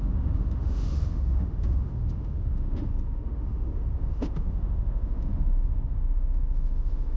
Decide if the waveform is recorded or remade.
remade